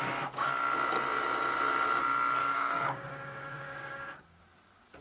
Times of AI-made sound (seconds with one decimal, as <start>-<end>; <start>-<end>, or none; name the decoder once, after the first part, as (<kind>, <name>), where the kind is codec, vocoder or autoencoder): 2.4-4.4 (codec, DAC)